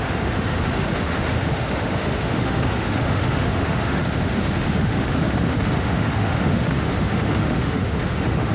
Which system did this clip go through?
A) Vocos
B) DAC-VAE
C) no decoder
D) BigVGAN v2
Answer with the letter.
B